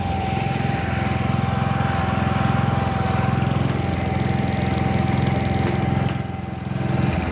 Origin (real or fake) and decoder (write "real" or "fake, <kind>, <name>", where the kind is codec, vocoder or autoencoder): real